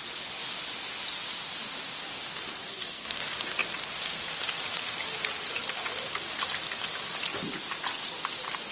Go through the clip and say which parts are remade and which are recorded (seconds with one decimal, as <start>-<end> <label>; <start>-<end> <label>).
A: 0.0-2.7 recorded; 2.7-3.2 remade; 3.2-8.7 recorded